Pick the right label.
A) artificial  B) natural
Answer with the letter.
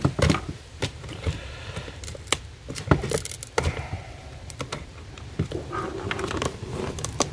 A